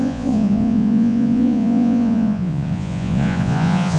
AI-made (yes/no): yes